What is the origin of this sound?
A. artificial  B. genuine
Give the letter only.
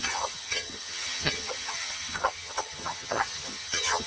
A